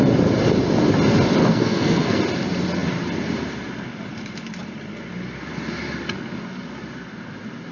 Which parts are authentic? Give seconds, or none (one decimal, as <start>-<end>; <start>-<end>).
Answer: 0.0-1.4; 2.2-7.7